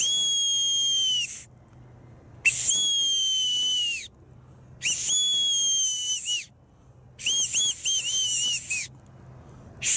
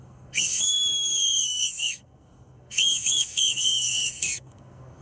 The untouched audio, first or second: first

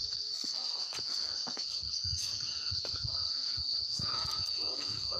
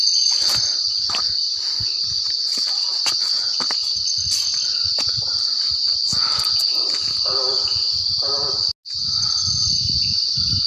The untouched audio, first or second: second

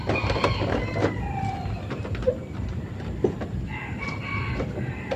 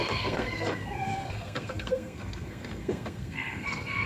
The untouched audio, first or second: first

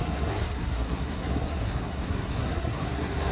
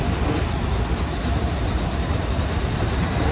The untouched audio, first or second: second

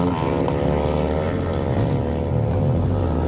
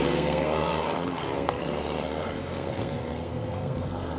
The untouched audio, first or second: first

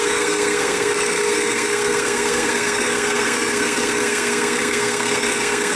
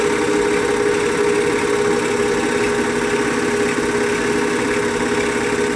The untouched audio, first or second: second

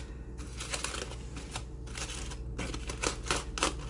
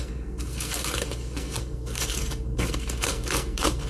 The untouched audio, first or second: first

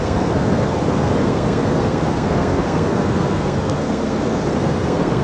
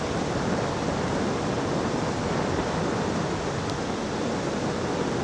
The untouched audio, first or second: second